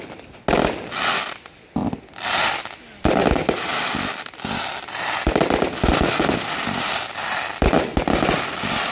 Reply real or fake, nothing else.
real